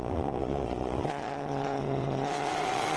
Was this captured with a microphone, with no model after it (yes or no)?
no